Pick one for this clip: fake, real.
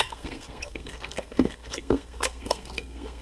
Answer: fake